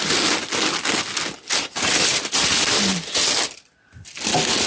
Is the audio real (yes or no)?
yes